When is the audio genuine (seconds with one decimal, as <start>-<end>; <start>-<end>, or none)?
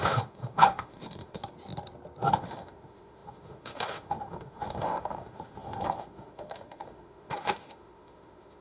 1.4-2.3